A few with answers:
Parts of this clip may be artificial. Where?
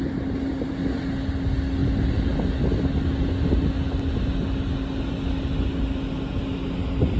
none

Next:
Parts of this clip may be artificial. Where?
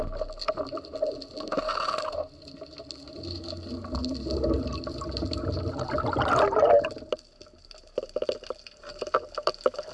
none